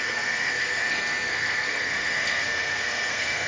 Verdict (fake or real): fake